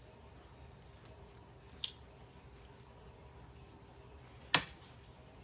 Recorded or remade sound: recorded